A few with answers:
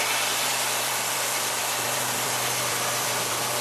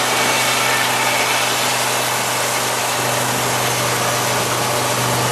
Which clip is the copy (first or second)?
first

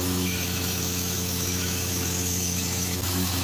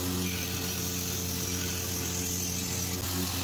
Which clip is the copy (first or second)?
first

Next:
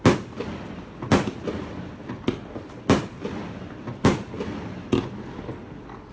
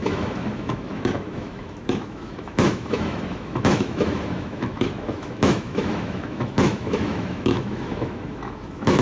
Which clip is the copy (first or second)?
second